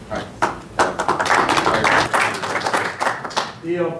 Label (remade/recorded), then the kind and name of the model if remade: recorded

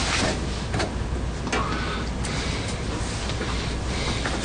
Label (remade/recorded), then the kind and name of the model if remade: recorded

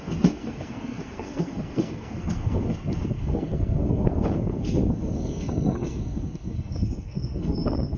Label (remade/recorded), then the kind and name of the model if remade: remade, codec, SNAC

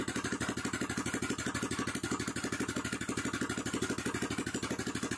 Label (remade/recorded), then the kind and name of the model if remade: recorded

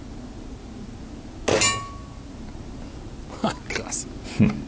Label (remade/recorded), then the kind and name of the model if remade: recorded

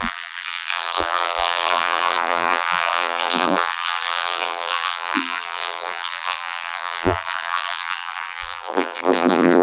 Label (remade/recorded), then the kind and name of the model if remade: remade, vocoder, BigVGAN v2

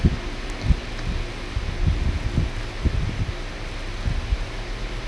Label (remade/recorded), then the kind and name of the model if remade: recorded